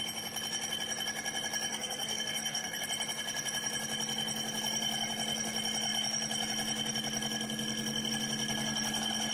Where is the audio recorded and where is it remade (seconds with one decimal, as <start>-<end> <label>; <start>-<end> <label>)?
0.0-1.7 recorded; 1.7-2.8 remade; 2.8-9.3 recorded